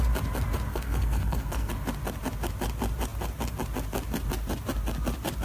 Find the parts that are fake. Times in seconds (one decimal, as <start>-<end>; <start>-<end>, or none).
0.7-1.7

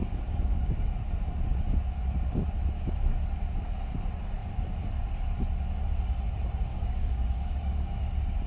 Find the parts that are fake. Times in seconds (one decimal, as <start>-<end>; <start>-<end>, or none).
0.0-1.2; 6.7-8.1